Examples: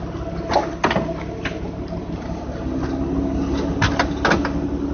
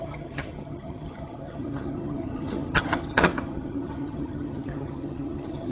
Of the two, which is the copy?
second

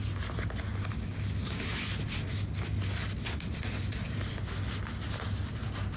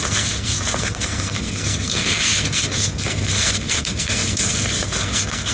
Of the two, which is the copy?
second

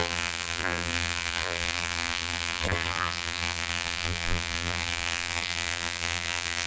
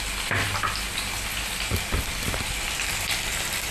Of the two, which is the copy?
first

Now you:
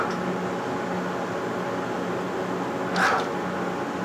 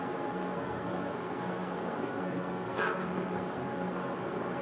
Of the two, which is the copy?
second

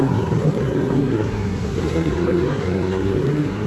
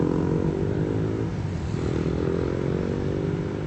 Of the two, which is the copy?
first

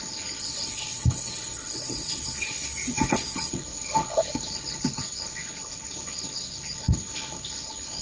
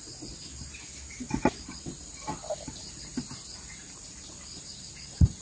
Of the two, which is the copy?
first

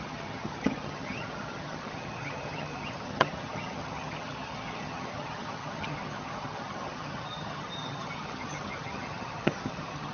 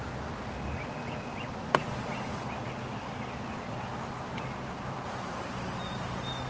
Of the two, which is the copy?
first